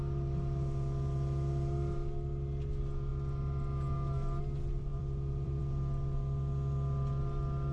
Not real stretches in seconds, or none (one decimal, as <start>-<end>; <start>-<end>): 4.9-5.6